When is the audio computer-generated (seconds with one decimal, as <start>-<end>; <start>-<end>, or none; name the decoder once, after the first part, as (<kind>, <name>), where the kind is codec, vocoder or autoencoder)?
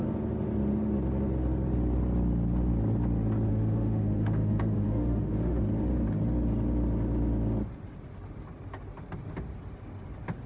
3.5-5.6 (autoencoder, DAC-VAE)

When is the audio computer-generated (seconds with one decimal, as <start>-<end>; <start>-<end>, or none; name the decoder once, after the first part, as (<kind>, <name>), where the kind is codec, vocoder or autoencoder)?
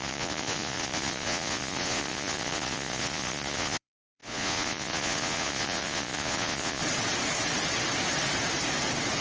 0.0-6.8 (vocoder, Vocos)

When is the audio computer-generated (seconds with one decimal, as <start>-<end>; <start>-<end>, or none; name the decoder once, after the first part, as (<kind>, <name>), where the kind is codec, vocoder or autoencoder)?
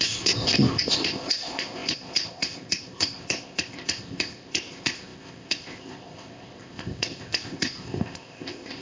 0.0-8.8 (codec, ZipCodec)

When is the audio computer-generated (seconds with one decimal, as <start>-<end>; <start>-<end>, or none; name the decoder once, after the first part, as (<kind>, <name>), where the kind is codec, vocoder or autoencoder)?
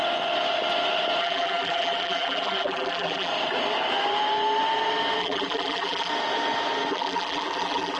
1.2-3.3 (vocoder, BigVGAN v2); 5.2-6.1; 6.9-8.0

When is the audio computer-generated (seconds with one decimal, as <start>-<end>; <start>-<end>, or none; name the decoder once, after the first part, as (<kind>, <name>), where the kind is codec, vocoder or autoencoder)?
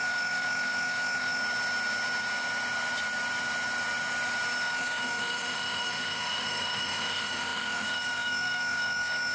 0.0-1.4 (autoencoder, DAC-VAE); 4.6-9.3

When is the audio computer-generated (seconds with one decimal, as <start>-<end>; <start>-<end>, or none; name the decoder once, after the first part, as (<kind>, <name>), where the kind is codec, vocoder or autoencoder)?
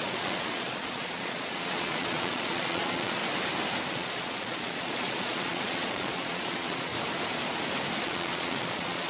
0.0-3.2 (vocoder, Vocos); 3.9-6.9; 8.0-9.1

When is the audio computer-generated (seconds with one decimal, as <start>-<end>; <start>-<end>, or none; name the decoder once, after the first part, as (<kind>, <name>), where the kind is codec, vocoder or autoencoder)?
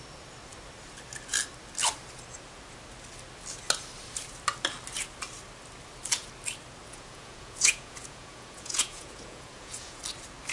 6.9-10.0 (vocoder, Vocos)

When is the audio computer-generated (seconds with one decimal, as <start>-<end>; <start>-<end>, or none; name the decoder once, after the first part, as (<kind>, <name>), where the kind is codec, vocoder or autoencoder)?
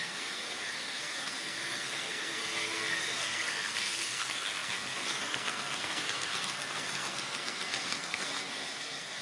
0.0-9.2 (codec, SNAC)